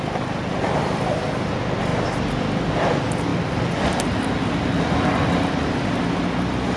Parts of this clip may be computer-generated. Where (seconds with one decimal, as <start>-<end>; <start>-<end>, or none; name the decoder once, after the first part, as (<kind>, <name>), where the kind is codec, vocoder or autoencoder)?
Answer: none